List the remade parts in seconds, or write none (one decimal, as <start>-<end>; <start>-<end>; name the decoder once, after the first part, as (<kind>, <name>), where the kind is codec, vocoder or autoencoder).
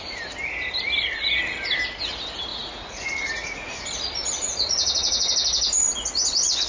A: 2.5-3.8 (vocoder, Vocos); 4.4-5.3